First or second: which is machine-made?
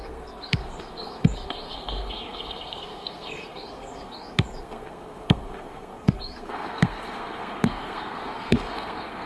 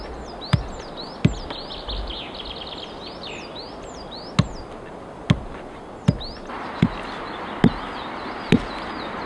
first